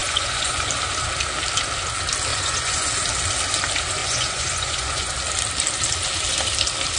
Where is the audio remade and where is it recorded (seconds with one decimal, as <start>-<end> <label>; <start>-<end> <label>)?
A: 0.0-0.7 remade; 0.7-2.3 recorded; 2.3-2.9 remade; 2.9-4.0 recorded; 4.0-5.1 remade; 5.1-7.0 recorded